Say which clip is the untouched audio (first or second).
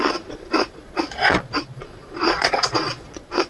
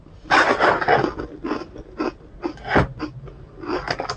second